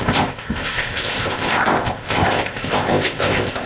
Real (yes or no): no